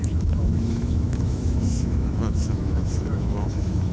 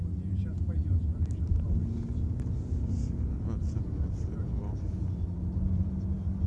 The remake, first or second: first